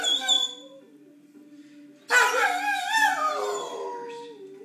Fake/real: real